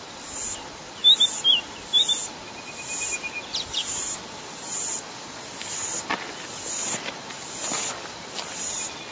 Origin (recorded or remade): recorded